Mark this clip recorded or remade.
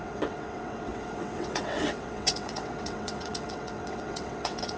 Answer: remade